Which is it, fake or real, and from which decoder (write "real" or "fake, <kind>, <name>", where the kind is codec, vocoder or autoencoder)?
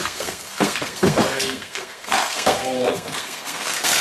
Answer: fake, codec, SNAC